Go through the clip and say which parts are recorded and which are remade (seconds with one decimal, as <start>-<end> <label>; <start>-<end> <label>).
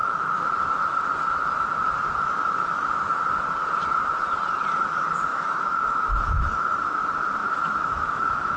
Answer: 0.0-0.5 remade; 0.5-2.2 recorded; 2.2-3.2 remade; 3.2-5.3 recorded; 5.3-7.0 remade; 7.0-7.4 recorded; 7.4-8.6 remade